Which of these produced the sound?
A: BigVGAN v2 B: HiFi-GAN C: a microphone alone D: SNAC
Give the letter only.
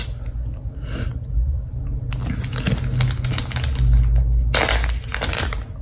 C